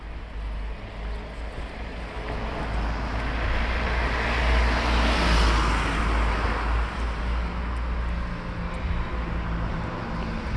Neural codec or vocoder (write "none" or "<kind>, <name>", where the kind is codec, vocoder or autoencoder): none